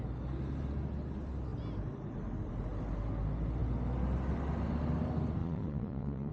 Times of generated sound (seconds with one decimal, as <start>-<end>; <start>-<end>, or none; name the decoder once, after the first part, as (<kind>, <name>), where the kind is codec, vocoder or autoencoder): 5.4-6.3 (vocoder, Vocos)

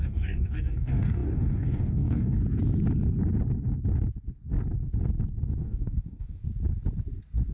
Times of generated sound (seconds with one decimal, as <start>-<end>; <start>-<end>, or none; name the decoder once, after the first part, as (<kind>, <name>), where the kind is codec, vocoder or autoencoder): 0.0-2.4 (codec, DAC); 5.6-6.4

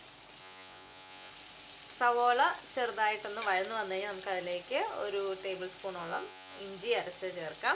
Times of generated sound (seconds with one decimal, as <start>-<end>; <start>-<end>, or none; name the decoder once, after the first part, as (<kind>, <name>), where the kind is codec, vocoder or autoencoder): 0.4-1.3 (vocoder, Vocos); 6.0-6.6